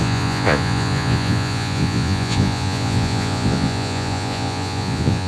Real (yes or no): no